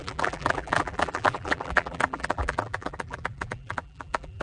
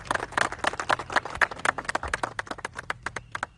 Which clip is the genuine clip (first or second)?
second